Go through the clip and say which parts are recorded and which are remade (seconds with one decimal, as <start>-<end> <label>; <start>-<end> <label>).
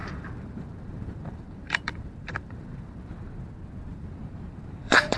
0.0-3.1 remade; 3.1-3.9 recorded; 3.9-5.2 remade